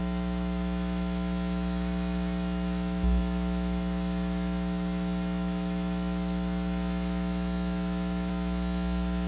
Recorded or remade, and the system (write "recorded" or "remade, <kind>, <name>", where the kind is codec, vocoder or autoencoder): remade, autoencoder, DAC-VAE